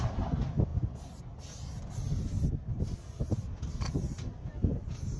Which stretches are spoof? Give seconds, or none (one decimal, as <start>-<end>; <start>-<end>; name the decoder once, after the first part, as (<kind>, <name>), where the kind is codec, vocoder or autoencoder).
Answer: none